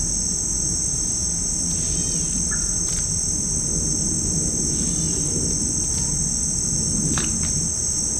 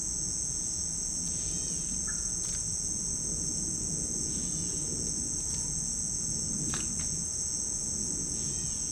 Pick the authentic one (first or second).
first